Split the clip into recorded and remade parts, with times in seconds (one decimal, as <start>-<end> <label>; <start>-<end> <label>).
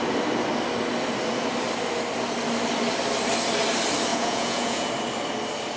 0.0-4.1 recorded; 4.1-4.9 remade; 4.9-5.8 recorded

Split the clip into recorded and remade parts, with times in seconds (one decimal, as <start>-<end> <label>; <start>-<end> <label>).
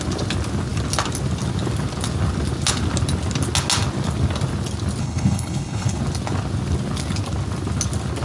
0.0-5.0 recorded; 5.0-6.0 remade; 6.0-8.2 recorded